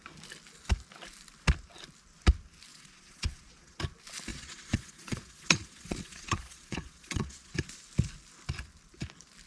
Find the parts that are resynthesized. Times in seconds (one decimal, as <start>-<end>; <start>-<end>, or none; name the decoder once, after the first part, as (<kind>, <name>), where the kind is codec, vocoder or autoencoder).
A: 2.7-3.8 (vocoder, Vocos); 4.3-7.5